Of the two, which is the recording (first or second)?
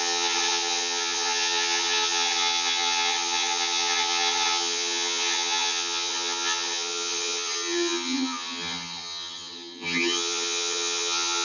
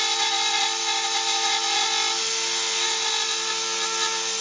second